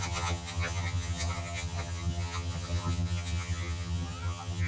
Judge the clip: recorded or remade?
remade